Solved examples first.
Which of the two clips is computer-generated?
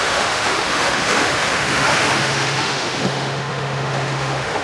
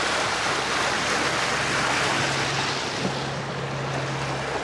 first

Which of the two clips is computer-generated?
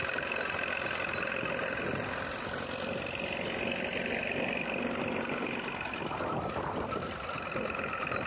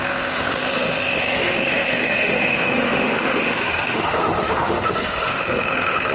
second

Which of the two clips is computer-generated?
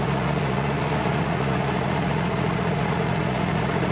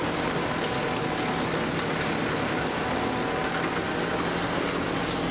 first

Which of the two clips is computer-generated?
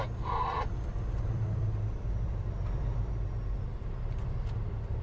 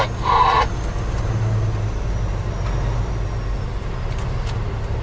first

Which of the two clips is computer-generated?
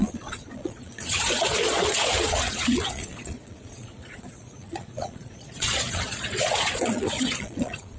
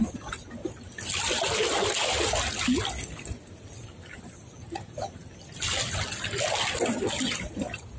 first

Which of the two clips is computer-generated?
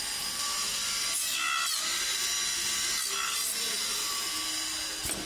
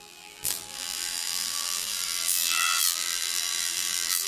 second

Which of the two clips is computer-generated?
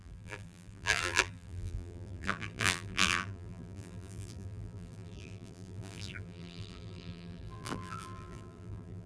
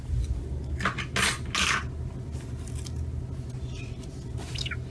first